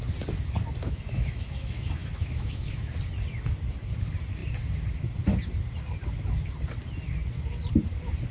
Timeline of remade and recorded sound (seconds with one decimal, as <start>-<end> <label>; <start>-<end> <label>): 0.0-0.8 recorded; 0.8-2.9 remade; 2.9-8.3 recorded